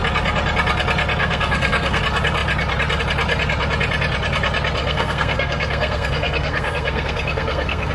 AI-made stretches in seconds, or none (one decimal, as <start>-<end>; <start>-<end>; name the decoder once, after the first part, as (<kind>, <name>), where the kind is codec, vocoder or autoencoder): 1.2-2.0 (codec, SNAC); 4.8-7.9